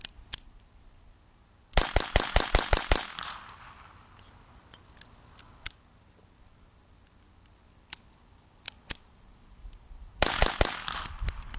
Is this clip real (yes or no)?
yes